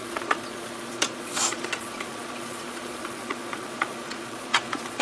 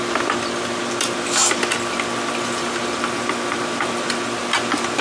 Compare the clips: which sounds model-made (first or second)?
first